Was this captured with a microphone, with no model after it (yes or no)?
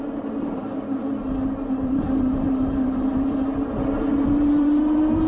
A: no